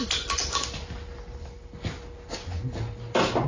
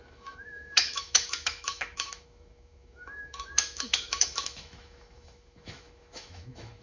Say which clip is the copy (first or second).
second